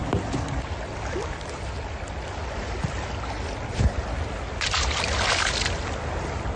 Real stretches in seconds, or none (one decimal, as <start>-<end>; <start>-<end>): 0.0-6.6

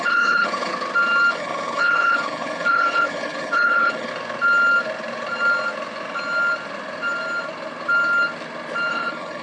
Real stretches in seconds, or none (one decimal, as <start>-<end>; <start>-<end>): 0.7-1.3; 4.1-8.9

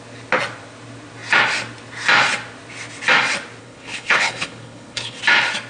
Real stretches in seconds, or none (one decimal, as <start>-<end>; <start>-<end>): 0.0-3.6; 5.2-5.7

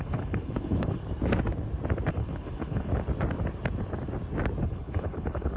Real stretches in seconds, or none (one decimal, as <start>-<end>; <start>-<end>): 1.0-2.1; 2.9-4.6

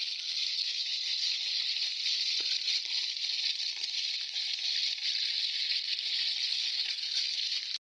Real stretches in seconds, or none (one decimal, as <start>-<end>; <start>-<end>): 0.0-0.5; 1.5-6.5; 7.2-7.8

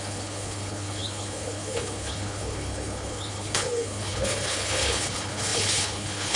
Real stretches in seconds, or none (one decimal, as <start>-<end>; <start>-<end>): none

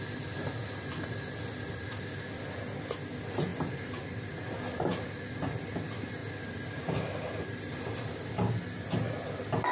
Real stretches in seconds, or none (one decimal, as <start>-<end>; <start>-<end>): 0.0-9.7

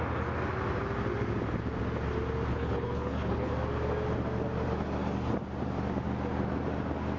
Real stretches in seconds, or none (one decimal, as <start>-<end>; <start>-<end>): 0.0-2.5; 3.5-7.2